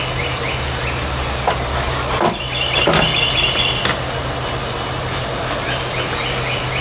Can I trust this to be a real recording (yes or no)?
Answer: yes